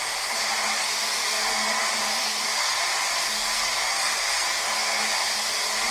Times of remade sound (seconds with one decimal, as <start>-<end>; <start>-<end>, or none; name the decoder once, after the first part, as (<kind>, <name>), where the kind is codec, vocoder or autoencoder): 0.8-1.8 (codec, SNAC); 2.2-2.8; 3.3-5.0